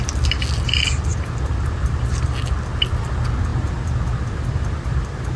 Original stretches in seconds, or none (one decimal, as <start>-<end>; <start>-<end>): 0.0-5.4